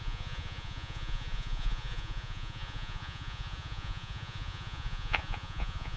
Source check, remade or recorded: remade